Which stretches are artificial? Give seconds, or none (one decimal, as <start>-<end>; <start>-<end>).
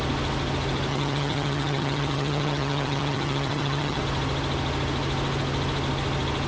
0.9-4.0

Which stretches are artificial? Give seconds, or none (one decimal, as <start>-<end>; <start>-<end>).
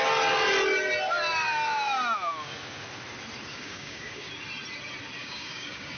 3.5-4.3; 5.2-6.0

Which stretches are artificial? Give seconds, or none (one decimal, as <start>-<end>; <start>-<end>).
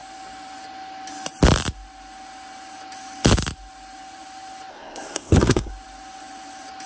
4.7-5.7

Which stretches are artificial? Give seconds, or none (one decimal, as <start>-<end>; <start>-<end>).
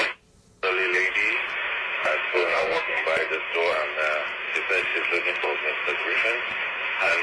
2.3-3.0